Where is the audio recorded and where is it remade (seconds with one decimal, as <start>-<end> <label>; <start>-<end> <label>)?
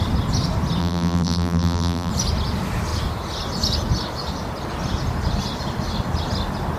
0.0-0.8 recorded; 0.8-2.1 remade; 2.1-6.8 recorded